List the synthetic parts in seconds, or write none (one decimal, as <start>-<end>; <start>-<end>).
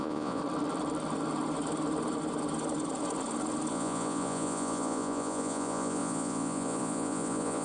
0.0-0.4; 3.7-7.6